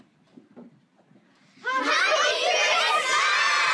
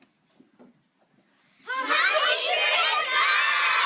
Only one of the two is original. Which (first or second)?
second